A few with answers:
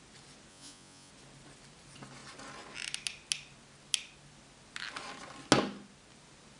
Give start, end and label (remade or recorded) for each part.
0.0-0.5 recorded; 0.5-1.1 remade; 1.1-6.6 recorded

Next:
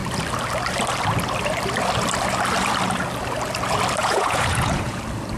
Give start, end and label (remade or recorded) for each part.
0.0-4.0 recorded; 4.0-5.0 remade; 5.0-5.4 recorded

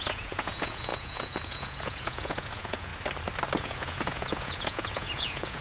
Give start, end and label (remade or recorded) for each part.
0.0-2.9 remade; 2.9-3.6 recorded; 3.6-5.6 remade